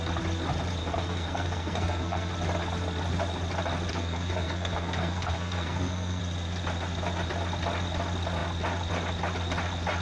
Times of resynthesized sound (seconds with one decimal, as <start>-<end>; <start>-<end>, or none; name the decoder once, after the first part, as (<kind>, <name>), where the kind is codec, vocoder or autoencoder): 0.8-2.3 (codec, SNAC); 3.9-6.2